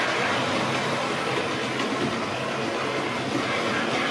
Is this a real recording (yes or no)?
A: yes